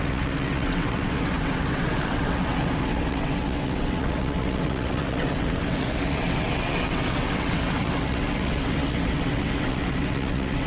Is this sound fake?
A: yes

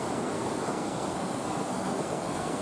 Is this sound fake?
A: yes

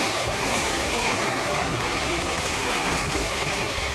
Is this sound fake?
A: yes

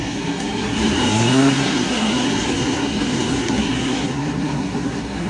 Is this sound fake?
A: yes